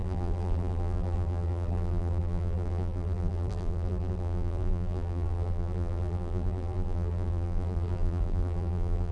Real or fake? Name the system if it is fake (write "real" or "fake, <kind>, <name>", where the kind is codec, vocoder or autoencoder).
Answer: fake, vocoder, BigVGAN v2